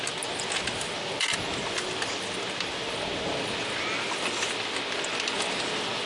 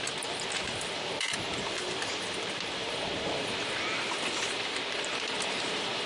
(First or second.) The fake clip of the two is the second